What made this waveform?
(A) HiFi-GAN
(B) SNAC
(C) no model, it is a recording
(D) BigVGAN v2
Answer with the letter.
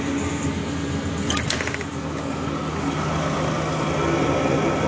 C